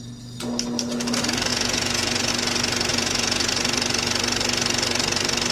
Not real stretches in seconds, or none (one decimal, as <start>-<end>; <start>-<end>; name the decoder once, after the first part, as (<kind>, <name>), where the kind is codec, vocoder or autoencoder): 1.5-2.3 (vocoder, Vocos); 2.9-3.5